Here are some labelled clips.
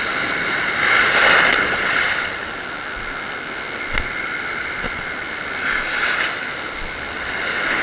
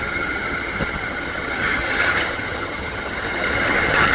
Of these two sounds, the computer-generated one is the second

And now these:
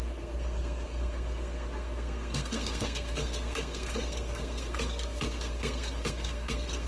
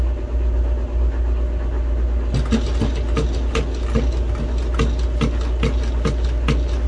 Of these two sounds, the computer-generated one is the first